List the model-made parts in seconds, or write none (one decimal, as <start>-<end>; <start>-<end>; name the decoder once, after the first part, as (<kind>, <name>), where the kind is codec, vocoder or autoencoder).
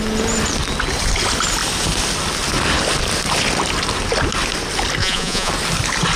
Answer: 5.0-5.5 (vocoder, Vocos)